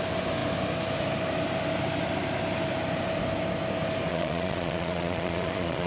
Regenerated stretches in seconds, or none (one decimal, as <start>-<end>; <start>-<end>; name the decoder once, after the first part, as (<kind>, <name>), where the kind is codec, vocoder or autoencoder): 4.1-5.9 (vocoder, Vocos)